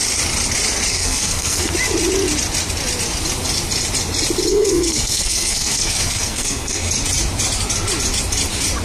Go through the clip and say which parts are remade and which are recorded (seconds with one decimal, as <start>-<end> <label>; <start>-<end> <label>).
0.0-0.9 recorded; 0.9-1.7 remade; 1.7-4.5 recorded; 4.5-6.9 remade; 6.9-8.8 recorded